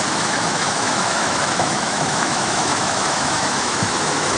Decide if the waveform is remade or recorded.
remade